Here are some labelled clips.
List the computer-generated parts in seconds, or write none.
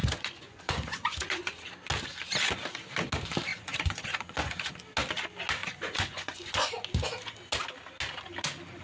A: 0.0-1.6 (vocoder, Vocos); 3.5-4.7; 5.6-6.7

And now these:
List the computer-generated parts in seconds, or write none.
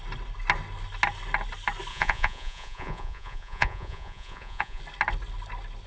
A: 1.9-4.8 (vocoder, Vocos)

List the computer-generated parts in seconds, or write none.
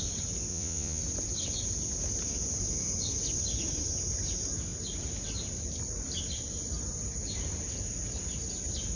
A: 0.5-1.0 (vocoder, Vocos)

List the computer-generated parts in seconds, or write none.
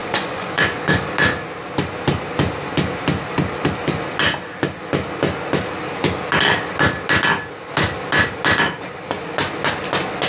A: 0.0-1.0 (vocoder, Vocos)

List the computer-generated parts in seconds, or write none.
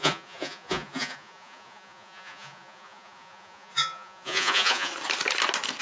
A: 0.0-4.9 (vocoder, Vocos)